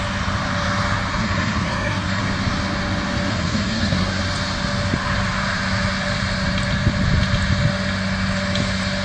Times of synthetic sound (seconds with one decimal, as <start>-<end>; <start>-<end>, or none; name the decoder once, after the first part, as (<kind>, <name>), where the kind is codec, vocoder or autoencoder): 1.1-2.2 (codec, SNAC); 3.3-4.2